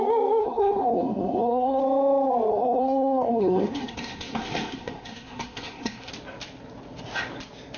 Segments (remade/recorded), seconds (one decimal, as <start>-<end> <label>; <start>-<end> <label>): 0.0-0.4 recorded; 0.4-1.8 remade; 1.8-2.5 recorded; 2.5-6.1 remade; 6.1-7.8 recorded

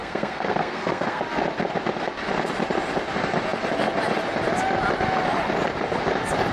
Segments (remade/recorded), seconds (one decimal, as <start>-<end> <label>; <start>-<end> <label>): 0.0-1.2 remade; 1.2-6.5 recorded

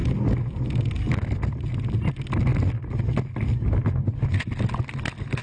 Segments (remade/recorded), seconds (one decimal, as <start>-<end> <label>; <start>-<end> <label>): 0.0-5.4 recorded

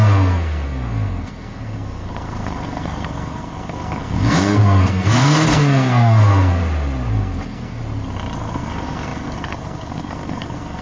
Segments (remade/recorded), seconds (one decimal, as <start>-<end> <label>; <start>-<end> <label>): 0.0-6.6 remade; 6.6-7.1 recorded; 7.1-7.8 remade; 7.8-8.5 recorded; 8.5-10.8 remade

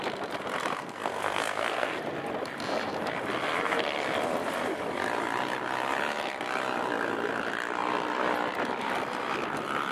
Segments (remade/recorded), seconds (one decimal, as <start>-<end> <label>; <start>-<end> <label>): 0.0-0.8 recorded; 0.8-2.0 remade; 2.0-9.9 recorded

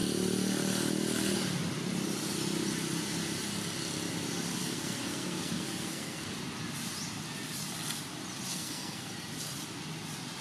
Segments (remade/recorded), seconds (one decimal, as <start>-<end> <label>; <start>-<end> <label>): 0.0-4.6 recorded; 4.6-6.3 remade; 6.3-8.5 recorded; 8.5-9.1 remade; 9.1-10.4 recorded